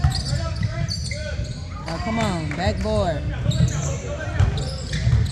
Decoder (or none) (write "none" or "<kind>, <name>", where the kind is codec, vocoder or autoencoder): none